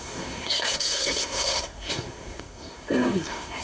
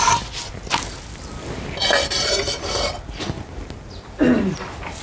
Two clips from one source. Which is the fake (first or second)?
first